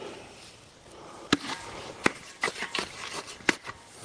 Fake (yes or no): yes